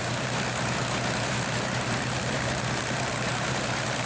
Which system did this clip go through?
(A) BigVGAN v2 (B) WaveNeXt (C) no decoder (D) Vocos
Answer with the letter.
A